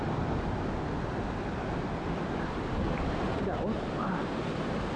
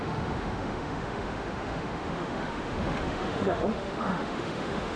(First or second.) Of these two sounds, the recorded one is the first